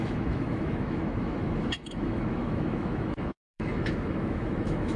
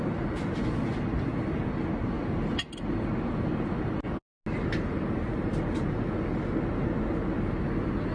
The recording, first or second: second